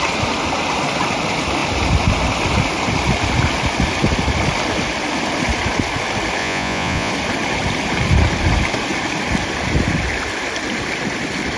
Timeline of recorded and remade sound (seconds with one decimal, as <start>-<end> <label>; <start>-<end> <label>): 0.0-6.4 recorded; 6.4-7.1 remade; 7.1-11.6 recorded